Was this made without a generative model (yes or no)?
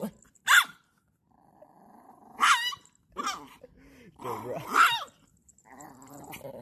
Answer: yes